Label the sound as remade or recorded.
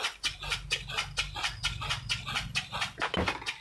recorded